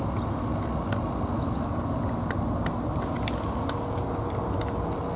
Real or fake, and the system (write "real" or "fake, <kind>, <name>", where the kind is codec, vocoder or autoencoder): real